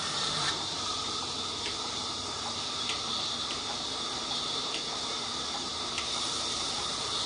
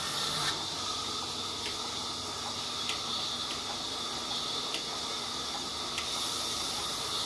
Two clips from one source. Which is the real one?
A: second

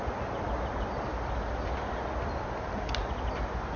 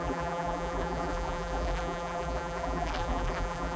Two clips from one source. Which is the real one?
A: first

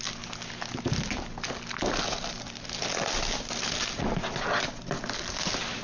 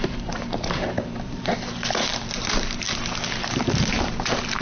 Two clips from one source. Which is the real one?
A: first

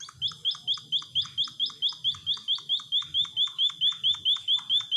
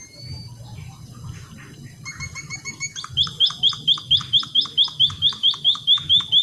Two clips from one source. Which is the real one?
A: first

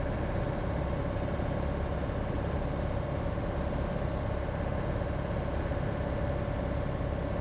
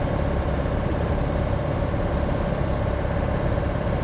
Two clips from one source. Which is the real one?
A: first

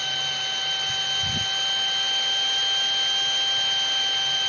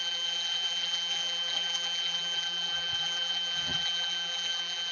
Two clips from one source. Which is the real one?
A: first